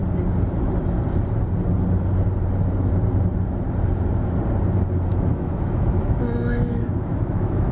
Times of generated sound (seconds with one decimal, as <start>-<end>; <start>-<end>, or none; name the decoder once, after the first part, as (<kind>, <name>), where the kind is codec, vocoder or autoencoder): 5.1-7.7 (autoencoder, DAC-VAE)